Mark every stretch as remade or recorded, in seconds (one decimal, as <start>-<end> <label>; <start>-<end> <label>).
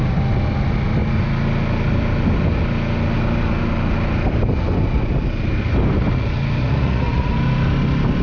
0.0-6.6 recorded; 6.6-7.3 remade; 7.3-8.2 recorded